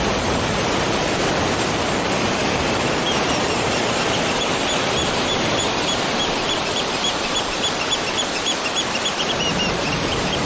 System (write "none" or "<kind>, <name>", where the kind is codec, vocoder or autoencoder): vocoder, BigVGAN v2